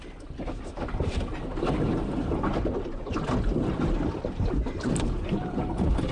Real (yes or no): yes